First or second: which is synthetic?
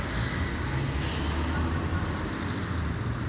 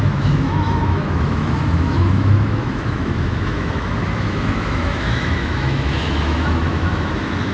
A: second